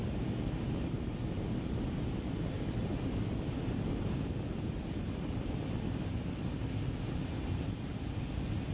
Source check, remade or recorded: recorded